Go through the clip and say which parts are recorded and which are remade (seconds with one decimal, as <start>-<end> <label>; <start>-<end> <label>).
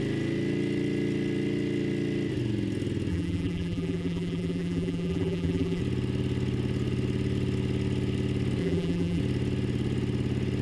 0.0-3.1 recorded; 3.1-5.8 remade; 5.8-8.6 recorded; 8.6-9.2 remade; 9.2-10.6 recorded